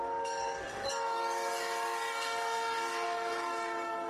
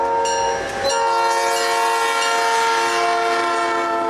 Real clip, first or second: second